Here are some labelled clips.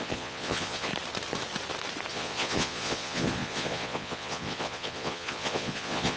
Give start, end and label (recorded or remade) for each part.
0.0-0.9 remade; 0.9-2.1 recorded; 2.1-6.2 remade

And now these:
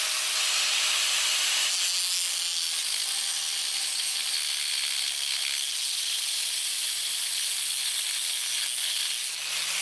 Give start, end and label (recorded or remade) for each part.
0.0-9.8 recorded

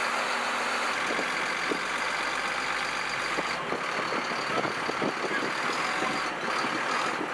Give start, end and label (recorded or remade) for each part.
0.0-7.3 recorded

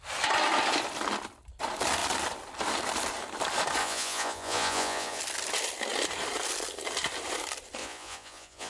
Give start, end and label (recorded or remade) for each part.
0.0-3.8 recorded; 3.8-5.2 remade; 5.2-7.8 recorded; 7.8-8.7 remade

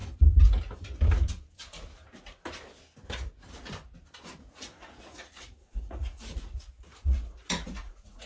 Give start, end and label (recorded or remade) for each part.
0.0-4.4 recorded; 4.4-8.3 remade